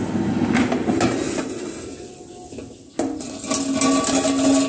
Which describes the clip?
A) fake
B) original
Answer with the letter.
B